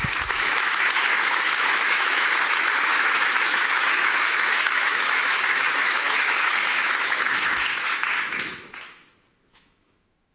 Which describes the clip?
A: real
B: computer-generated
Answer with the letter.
B